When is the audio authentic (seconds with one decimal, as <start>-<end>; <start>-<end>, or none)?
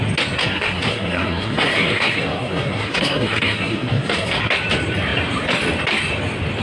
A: 0.0-0.4; 4.4-6.6